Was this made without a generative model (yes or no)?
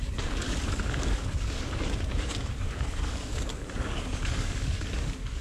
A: no